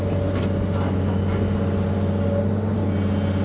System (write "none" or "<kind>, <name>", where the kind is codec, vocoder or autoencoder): none